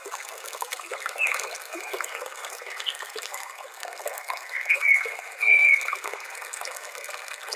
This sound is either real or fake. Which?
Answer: fake